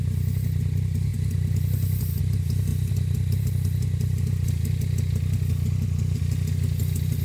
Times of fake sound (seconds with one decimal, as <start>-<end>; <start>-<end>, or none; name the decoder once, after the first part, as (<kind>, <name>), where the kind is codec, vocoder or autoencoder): none